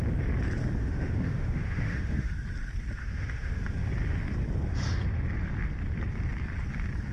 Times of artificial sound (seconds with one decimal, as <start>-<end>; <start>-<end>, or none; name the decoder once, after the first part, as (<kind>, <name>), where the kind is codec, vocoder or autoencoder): 0.8-2.3 (autoencoder, DAC-VAE); 3.0-3.6

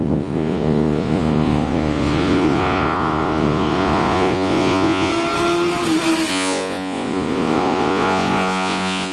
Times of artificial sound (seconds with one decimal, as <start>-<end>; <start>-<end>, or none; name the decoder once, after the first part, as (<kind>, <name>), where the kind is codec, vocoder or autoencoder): 0.0-5.1 (vocoder, Vocos); 6.3-9.1

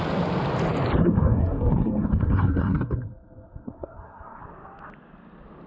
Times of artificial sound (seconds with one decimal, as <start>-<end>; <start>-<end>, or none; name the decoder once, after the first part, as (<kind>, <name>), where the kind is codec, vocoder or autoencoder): 1.0-4.4 (codec, SNAC)

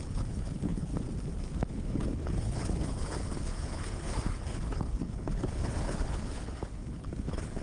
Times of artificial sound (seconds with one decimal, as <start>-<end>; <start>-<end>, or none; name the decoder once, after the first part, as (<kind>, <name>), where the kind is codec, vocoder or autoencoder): 0.0-0.9 (codec, HILCodec); 1.7-7.6

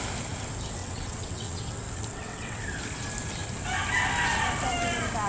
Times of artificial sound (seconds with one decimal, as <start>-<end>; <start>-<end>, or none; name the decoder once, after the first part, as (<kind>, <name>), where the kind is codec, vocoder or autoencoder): 0.8-1.6 (vocoder, WaveNeXt); 2.1-2.6

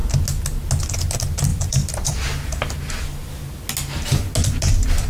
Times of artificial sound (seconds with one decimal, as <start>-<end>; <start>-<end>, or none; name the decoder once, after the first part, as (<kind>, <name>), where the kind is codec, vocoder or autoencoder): 1.5-3.3 (vocoder, BigVGAN v2)

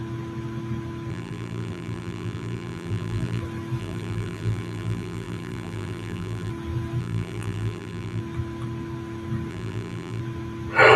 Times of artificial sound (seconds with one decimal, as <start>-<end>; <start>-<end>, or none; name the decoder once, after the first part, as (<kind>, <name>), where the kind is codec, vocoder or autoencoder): 1.1-3.4 (vocoder, BigVGAN v2); 3.8-6.5; 7.0-8.2; 9.5-10.2

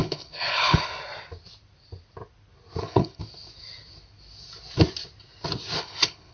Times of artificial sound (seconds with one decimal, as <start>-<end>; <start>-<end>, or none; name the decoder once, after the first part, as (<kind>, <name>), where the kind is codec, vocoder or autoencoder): 0.0-0.9 (codec, HILCodec); 2.8-3.2; 5.8-6.3